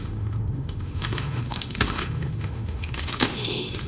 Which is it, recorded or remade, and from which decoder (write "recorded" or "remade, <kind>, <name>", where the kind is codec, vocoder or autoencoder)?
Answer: remade, autoencoder, DAC-VAE